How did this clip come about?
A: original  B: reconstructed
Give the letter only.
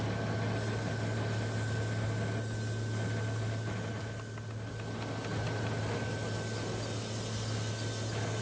A